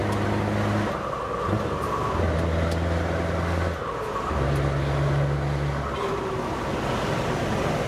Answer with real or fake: real